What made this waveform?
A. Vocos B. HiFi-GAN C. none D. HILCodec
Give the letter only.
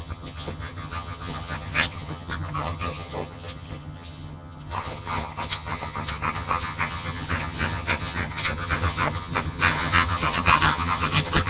B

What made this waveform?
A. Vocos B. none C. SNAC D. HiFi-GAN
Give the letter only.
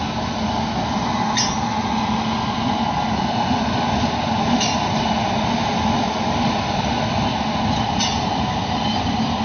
B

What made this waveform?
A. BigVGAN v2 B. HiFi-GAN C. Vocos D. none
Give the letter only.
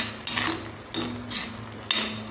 D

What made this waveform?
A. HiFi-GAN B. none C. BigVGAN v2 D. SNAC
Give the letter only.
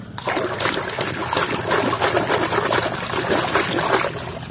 B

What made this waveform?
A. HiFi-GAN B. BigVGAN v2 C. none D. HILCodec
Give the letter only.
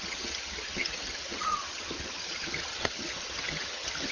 A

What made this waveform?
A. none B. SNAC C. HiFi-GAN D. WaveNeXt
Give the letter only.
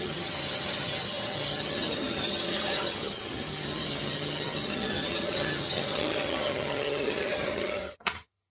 C